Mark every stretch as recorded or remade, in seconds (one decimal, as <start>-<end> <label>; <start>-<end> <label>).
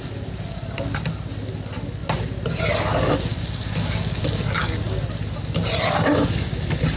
0.0-3.3 recorded; 3.3-4.2 remade; 4.2-7.0 recorded